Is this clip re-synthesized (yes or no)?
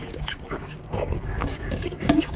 yes